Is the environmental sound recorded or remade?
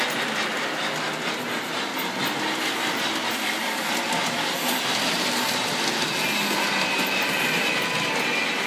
recorded